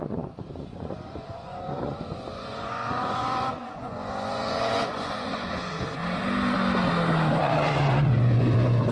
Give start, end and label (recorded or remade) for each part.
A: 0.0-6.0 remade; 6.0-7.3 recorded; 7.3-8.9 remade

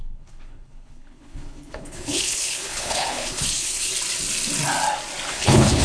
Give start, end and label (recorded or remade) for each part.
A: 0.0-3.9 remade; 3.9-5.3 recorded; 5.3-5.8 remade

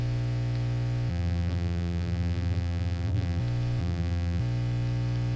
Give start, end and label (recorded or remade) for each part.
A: 0.0-1.1 recorded; 1.1-3.4 remade; 3.4-3.8 recorded; 3.8-4.4 remade; 4.4-5.4 recorded